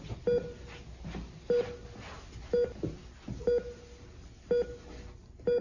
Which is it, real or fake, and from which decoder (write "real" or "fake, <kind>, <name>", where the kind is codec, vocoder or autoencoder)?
real